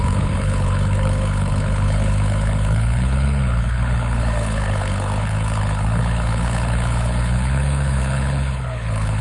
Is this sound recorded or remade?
remade